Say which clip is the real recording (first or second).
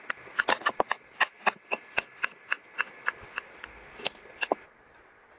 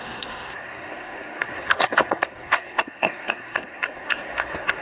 first